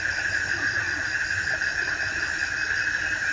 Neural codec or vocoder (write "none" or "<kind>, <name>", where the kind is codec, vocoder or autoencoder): none